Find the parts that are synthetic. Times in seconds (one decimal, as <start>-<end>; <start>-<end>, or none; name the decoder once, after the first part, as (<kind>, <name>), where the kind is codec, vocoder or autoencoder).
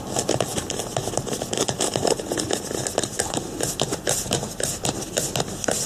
none